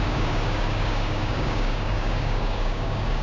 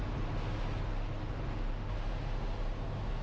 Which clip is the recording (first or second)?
second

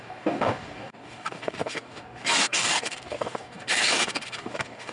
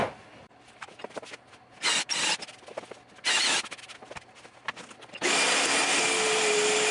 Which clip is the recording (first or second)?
second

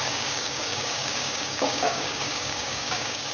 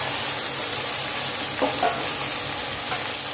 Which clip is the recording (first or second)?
second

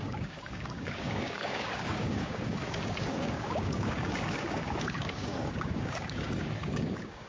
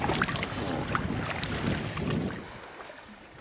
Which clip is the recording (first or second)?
second